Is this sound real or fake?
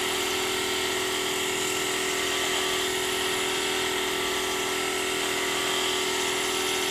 real